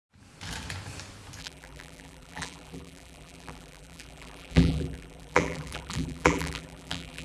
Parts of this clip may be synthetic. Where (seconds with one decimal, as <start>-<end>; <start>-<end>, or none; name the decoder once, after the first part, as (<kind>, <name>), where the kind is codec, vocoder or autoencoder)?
1.4-7.2 (vocoder, BigVGAN v2)